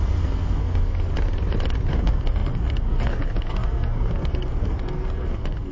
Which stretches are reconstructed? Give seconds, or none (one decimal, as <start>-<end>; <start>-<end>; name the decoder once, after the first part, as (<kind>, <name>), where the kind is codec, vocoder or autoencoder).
0.0-1.1 (codec, SNAC); 1.9-5.7